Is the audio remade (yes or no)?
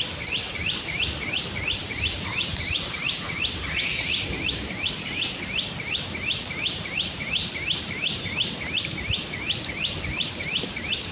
yes